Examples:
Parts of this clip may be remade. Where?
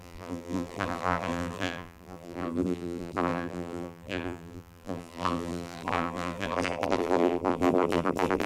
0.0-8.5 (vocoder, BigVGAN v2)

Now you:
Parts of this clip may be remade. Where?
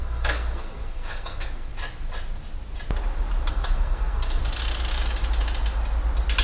0.0-1.7 (codec, SNAC); 3.5-4.4